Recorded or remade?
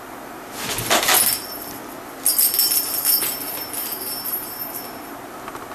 recorded